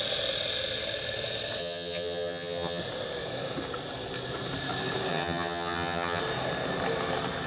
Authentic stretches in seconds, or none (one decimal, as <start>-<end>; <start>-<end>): 0.0-1.6; 2.8-5.1; 6.2-7.5